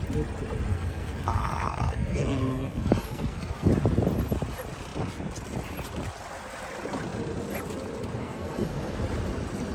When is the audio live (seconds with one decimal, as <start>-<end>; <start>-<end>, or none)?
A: 0.0-0.7; 3.7-8.2; 9.0-9.7